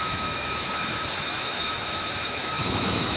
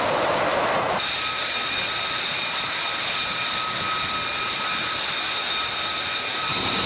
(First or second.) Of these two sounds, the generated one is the first